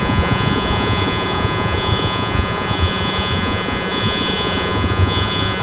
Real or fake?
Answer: fake